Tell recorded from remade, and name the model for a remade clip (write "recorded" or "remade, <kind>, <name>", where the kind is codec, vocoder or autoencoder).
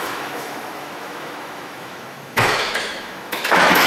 remade, autoencoder, DAC-VAE